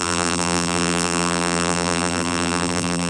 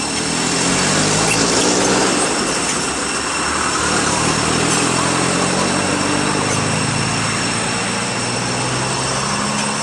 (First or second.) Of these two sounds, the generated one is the first